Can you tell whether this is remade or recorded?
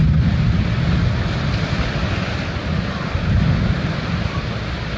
recorded